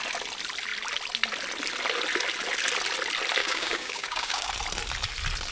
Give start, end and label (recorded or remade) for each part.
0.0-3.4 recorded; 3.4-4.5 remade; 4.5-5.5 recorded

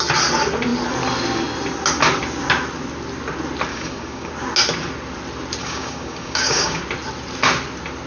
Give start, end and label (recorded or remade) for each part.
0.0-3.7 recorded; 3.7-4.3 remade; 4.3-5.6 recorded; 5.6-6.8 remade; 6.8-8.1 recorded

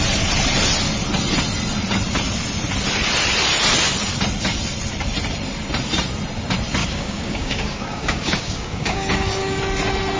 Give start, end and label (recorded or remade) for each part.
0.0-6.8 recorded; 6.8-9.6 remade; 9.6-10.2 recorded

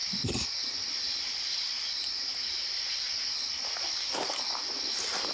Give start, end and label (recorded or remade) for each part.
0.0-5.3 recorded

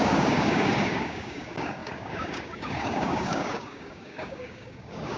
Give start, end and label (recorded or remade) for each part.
0.0-5.2 remade

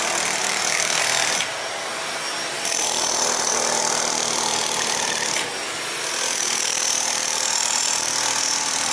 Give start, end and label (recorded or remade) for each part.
0.0-0.4 recorded; 0.4-1.0 remade; 1.0-8.9 recorded